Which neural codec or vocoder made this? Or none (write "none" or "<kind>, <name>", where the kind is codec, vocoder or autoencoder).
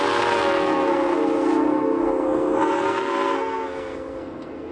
codec, SNAC